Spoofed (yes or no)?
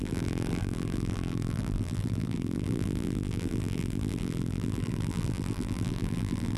yes